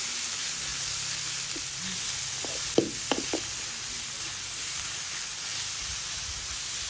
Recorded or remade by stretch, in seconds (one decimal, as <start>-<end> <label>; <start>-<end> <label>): 0.0-6.9 recorded